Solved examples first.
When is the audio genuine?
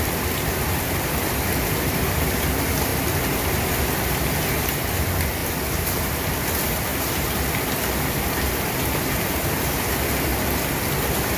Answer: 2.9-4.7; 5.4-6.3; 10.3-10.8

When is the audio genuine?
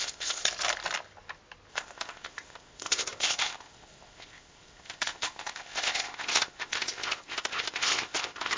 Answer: 0.4-1.7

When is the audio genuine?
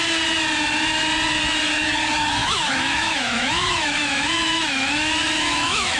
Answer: 0.0-2.4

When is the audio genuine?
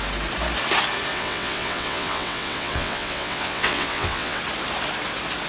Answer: 0.0-1.1; 4.4-5.5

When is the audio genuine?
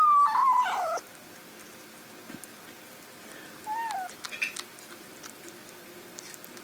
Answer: 0.0-6.6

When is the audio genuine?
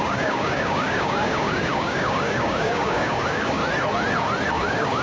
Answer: 3.6-4.5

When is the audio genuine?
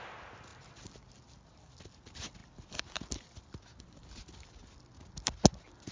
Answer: 0.0-5.9